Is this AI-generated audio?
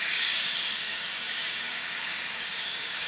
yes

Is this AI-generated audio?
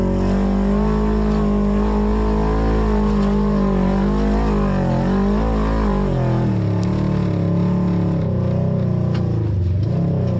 no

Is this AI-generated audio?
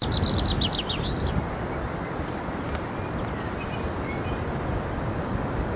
no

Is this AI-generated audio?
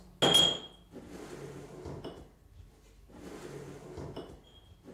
no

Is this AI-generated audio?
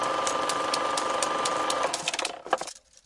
yes